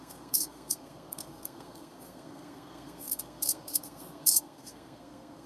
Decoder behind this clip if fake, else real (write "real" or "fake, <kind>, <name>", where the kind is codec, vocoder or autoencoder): fake, codec, SNAC